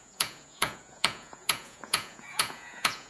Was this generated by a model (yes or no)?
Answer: yes